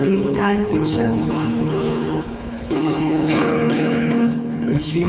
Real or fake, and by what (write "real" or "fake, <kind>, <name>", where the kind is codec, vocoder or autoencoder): fake, codec, HILCodec